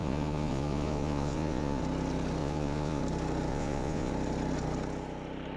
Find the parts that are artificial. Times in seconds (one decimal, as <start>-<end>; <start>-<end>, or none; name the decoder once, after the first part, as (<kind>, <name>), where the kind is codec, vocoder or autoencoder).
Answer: 0.0-1.8 (vocoder, Vocos); 2.4-3.0; 3.5-4.1